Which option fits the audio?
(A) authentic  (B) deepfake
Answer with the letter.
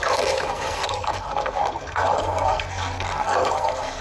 B